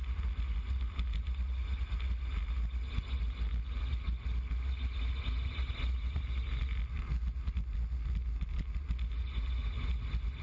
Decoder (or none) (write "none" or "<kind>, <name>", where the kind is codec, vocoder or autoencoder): none